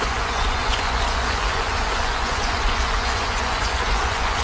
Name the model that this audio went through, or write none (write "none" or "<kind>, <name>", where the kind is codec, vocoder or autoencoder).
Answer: vocoder, Vocos